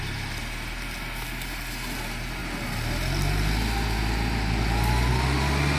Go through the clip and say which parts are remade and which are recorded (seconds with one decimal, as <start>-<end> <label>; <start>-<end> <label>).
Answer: 0.0-5.8 recorded